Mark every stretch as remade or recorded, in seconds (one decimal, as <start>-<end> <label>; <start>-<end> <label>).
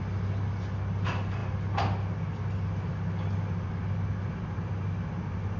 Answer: 0.0-5.6 recorded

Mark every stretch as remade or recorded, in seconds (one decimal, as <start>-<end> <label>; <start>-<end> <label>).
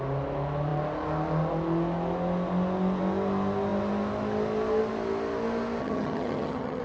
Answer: 0.0-5.8 recorded; 5.8-6.8 remade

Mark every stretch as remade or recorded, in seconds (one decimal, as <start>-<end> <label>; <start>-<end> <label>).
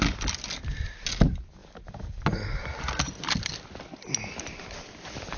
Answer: 0.0-5.4 recorded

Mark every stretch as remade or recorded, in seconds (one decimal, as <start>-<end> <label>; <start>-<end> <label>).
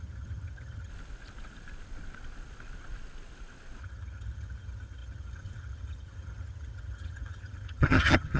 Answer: 0.0-0.9 remade; 0.9-3.8 recorded; 3.8-8.4 remade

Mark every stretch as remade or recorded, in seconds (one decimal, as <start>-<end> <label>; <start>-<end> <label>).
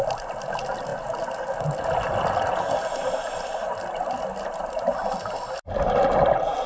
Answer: 0.0-6.7 recorded